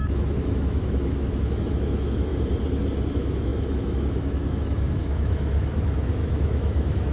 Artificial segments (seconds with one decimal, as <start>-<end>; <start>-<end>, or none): 0.0-2.3; 3.1-7.1